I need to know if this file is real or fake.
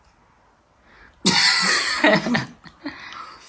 real